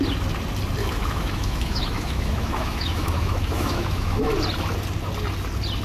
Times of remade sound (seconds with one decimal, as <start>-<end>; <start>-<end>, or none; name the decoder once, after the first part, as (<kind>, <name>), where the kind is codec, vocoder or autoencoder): 0.8-4.3 (autoencoder, DAC-VAE)